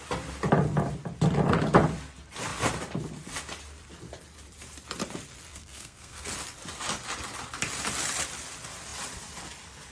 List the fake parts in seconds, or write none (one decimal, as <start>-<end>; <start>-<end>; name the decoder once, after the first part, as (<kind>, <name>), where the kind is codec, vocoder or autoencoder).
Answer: 5.5-6.3 (codec, SNAC)